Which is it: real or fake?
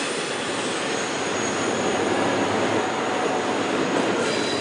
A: real